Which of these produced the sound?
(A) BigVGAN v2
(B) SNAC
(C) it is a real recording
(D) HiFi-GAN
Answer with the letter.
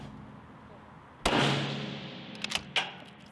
C